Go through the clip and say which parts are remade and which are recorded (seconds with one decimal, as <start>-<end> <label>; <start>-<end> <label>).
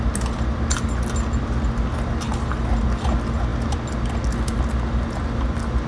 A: 0.0-5.9 recorded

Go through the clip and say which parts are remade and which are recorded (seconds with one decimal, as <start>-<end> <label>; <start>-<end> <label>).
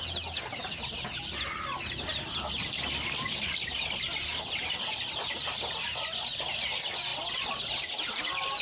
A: 0.0-8.6 recorded